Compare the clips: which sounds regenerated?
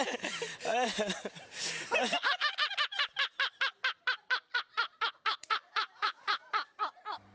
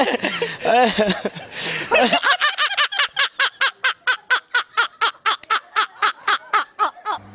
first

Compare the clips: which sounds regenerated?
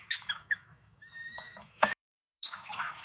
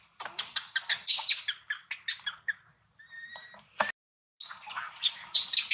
first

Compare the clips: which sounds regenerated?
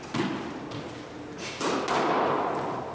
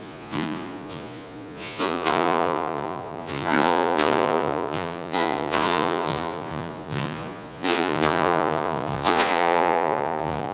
second